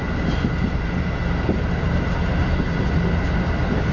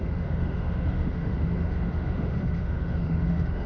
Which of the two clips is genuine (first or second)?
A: first